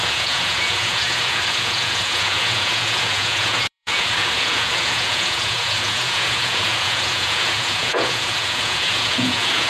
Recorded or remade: remade